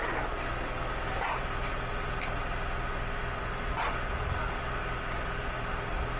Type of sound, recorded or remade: recorded